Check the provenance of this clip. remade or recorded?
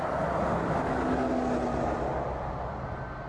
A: recorded